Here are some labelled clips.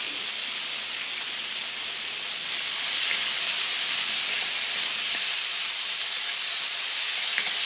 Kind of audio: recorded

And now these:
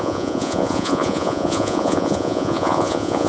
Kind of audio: remade